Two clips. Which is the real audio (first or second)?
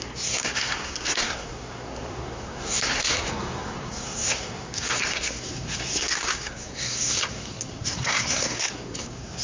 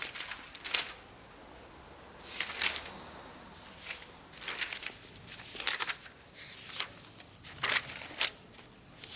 second